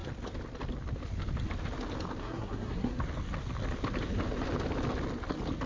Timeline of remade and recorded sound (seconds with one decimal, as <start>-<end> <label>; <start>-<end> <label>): 0.0-2.2 recorded; 2.2-3.0 remade; 3.0-5.7 recorded